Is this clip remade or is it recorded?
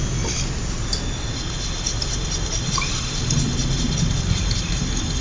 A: remade